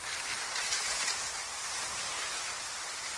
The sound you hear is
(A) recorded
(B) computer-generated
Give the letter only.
A